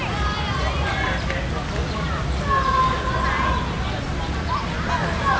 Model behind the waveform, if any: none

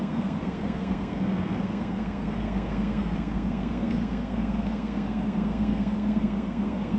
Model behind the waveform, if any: codec, SNAC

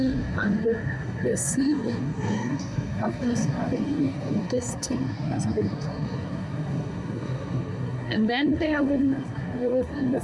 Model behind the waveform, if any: codec, SNAC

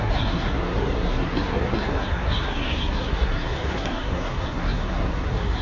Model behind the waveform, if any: codec, SNAC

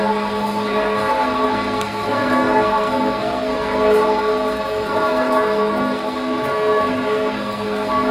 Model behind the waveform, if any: codec, SNAC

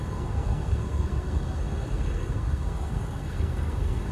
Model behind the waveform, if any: codec, SNAC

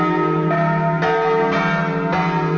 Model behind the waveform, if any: none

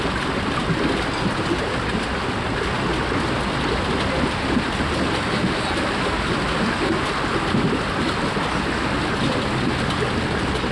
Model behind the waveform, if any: none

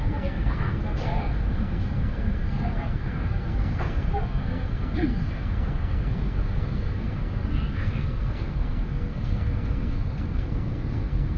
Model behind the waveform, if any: codec, SNAC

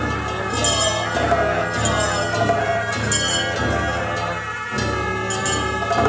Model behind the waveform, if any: none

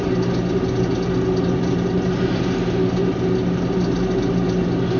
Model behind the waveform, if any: none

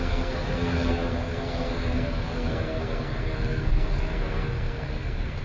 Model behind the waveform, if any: codec, SNAC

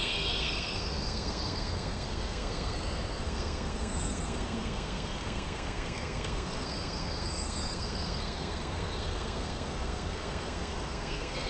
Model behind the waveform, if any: codec, SNAC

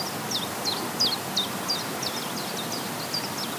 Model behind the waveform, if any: none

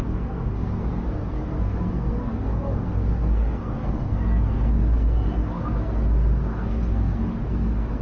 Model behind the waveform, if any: codec, SNAC